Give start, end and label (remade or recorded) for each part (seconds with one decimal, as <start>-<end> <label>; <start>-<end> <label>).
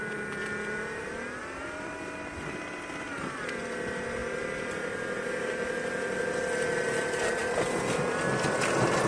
0.0-9.1 recorded